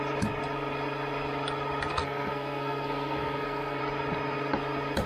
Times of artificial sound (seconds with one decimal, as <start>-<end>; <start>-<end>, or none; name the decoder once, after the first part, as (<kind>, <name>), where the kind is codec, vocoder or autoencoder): 1.9-3.8 (codec, SNAC)